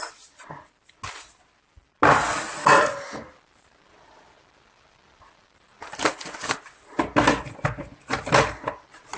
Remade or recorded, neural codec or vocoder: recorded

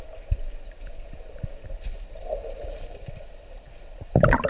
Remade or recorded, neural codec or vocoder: recorded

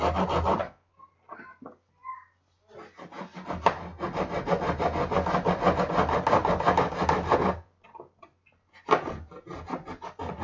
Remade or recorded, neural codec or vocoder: recorded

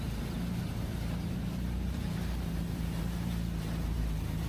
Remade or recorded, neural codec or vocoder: remade, vocoder, BigVGAN v2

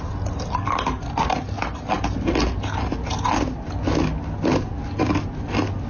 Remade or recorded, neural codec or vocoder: recorded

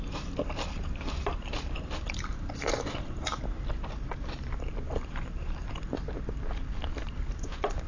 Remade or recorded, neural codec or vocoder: remade, vocoder, BigVGAN v2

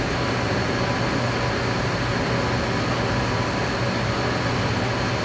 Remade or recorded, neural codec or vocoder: recorded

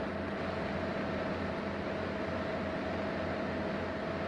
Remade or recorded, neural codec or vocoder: recorded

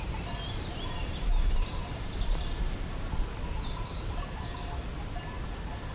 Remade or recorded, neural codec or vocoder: remade, vocoder, BigVGAN v2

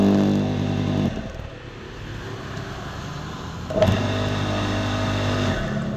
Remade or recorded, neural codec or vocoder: recorded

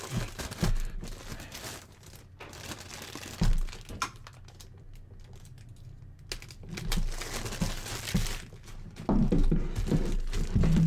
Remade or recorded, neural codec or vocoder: recorded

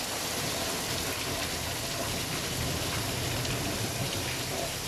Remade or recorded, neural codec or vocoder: recorded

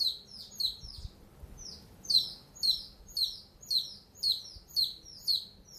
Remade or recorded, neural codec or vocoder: remade, vocoder, BigVGAN v2